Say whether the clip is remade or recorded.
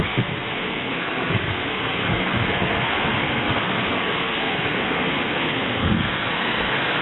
remade